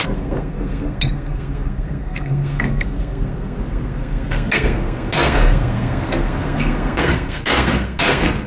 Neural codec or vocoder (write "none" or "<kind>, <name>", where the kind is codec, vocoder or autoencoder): codec, SNAC